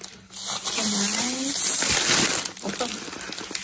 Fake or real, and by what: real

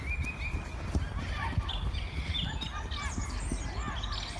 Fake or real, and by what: real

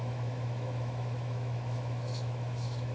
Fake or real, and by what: fake, autoencoder, DAC-VAE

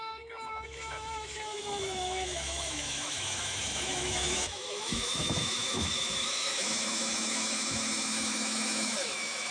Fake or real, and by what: fake, autoencoder, DAC-VAE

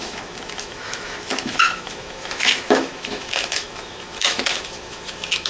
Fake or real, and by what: fake, autoencoder, DAC-VAE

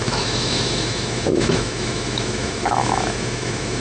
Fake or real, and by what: fake, autoencoder, DAC-VAE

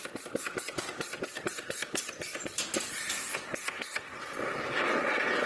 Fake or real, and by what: real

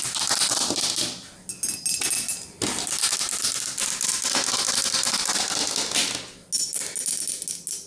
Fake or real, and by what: real